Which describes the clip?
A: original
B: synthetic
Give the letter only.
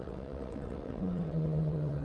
B